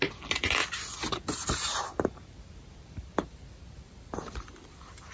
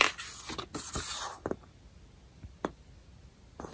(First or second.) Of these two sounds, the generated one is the first